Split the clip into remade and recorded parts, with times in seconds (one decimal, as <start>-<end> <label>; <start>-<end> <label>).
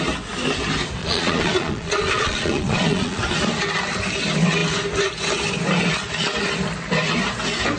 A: 0.0-1.0 recorded; 1.0-3.2 remade; 3.2-7.8 recorded